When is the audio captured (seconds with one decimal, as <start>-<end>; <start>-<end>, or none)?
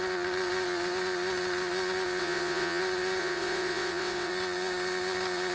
0.0-2.2; 2.8-3.2; 4.3-5.5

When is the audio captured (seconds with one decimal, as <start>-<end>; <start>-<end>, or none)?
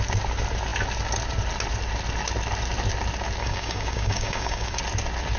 0.0-3.4; 4.8-5.4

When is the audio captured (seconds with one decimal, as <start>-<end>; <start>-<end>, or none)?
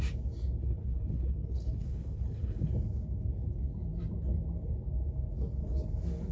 0.0-0.6; 2.7-6.3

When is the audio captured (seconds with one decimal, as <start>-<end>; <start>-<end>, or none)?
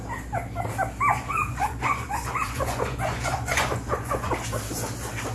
0.0-1.1; 4.3-5.3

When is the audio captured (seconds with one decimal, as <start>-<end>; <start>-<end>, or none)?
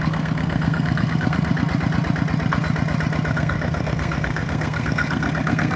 1.5-3.3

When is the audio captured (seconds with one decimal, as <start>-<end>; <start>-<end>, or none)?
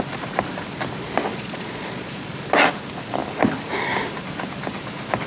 0.0-1.3; 2.3-5.3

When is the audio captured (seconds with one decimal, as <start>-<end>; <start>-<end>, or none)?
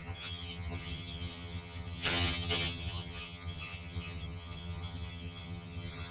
none